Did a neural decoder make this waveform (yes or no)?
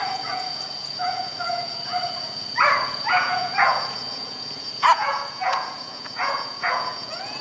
yes